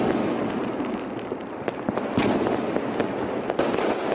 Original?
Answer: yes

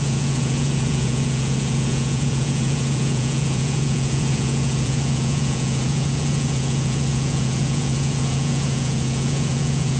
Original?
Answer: no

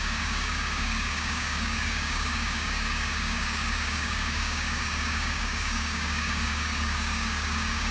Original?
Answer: no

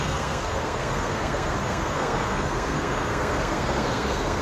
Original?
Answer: no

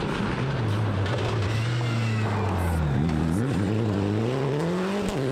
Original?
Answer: yes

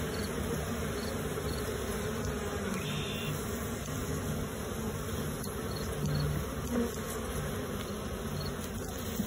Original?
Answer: yes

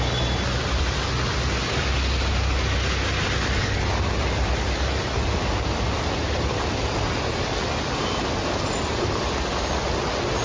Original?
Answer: yes